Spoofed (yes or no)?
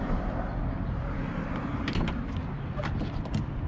no